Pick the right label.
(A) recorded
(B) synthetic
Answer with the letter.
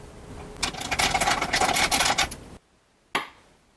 A